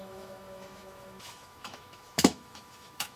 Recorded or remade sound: remade